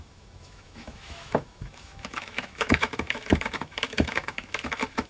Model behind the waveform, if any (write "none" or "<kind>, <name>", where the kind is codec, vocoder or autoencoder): autoencoder, DAC-VAE